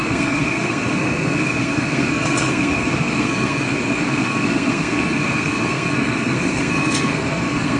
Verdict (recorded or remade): remade